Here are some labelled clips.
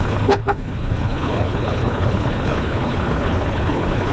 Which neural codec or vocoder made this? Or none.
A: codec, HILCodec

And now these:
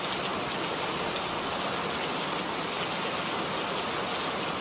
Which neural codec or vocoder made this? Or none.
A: none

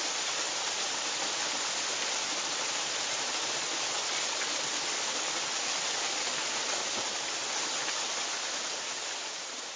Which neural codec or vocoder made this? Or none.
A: none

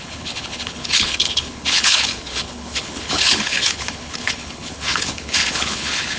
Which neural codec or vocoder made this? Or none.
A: codec, HILCodec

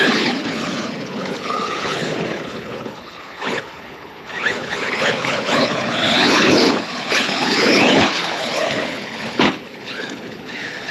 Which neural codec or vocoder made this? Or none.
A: codec, HILCodec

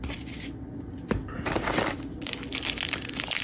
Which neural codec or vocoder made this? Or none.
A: none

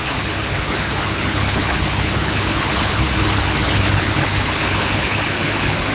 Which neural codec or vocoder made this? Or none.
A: codec, HILCodec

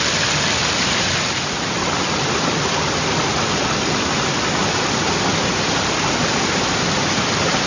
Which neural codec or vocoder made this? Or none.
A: none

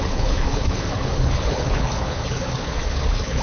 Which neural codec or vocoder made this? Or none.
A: codec, HILCodec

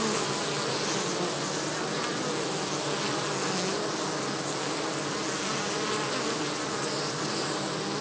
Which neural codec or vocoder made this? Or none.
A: none